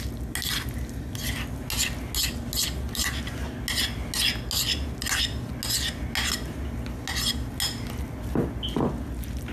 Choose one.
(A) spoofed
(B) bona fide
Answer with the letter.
B